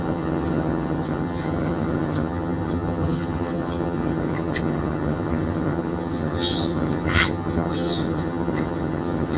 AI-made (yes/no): yes